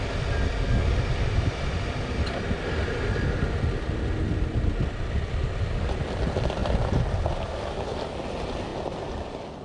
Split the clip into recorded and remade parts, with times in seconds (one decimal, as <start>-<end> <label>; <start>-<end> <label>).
0.0-9.6 recorded